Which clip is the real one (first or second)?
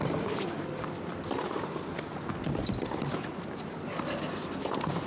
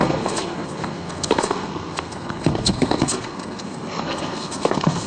first